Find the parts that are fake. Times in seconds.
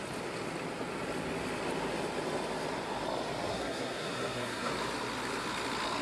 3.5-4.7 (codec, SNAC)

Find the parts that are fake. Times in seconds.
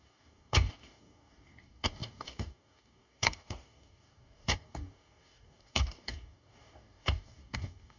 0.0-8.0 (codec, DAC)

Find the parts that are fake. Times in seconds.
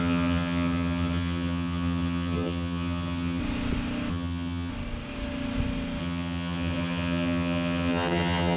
0.0-3.4 (vocoder, HiFi-GAN); 4.1-4.7; 6.0-8.6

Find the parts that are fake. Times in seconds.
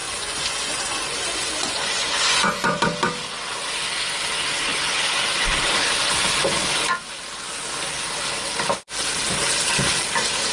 0.0-2.8 (vocoder, Vocos)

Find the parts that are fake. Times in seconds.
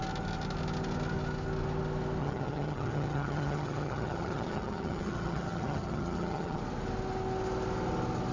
2.2-6.6 (vocoder, HiFi-GAN)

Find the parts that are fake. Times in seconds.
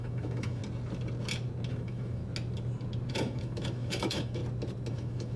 0.0-0.6 (autoencoder, DAC-VAE); 1.7-2.2; 3.1-4.4; 4.9-5.4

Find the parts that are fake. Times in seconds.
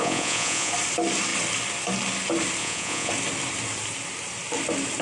0.0-0.7 (vocoder, Vocos); 2.6-3.1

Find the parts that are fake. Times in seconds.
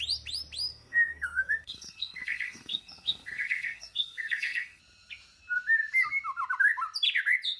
0.7-4.8 (codec, SNAC)